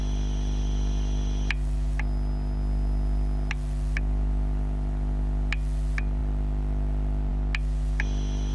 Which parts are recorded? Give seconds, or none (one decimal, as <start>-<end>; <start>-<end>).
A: 0.0-8.5

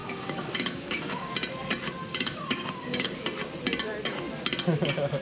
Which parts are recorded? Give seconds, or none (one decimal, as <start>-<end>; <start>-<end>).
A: 1.3-2.0; 3.1-5.2

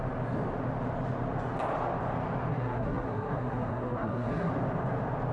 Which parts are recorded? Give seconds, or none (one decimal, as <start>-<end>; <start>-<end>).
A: 0.0-2.5; 4.5-5.3

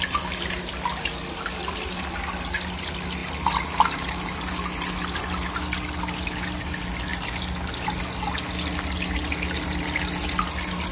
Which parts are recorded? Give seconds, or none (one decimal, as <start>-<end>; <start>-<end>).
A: 0.0-10.9

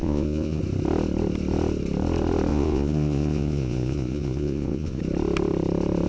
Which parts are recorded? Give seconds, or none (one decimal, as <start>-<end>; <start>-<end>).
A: 0.6-2.5; 5.0-6.1

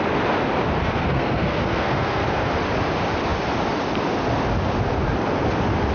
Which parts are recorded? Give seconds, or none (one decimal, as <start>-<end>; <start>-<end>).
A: 0.0-0.8; 2.5-5.9

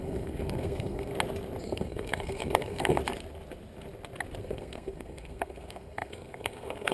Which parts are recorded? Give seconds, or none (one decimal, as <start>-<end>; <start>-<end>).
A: 1.1-1.6; 3.0-4.4

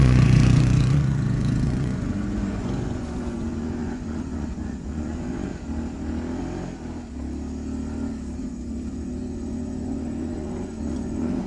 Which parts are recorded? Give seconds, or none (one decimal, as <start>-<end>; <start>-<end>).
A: 5.5-8.4